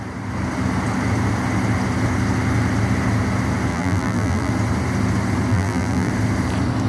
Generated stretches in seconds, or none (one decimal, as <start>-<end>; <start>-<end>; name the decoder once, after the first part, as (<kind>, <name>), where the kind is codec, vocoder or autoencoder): 3.7-4.5 (vocoder, BigVGAN v2); 5.5-6.1